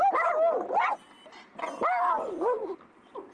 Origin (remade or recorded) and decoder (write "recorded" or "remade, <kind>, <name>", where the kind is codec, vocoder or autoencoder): recorded